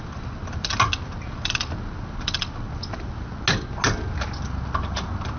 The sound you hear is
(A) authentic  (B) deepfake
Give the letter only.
A